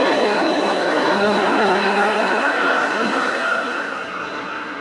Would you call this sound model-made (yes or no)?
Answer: yes